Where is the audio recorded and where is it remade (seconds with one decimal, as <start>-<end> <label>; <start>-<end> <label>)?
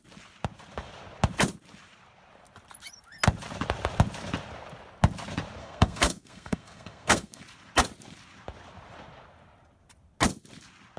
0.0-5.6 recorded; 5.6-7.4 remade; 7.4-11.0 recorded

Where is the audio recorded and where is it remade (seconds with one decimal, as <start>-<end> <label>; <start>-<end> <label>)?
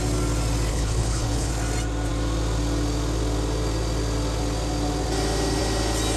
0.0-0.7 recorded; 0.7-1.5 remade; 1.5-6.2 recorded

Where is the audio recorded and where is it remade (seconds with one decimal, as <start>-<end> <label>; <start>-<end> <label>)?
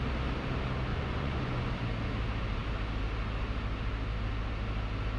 0.0-0.9 recorded; 0.9-1.7 remade; 1.7-5.2 recorded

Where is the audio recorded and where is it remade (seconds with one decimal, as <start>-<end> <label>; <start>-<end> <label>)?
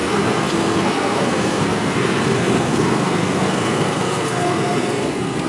0.0-5.5 remade